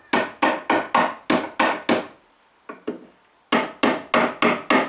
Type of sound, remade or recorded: recorded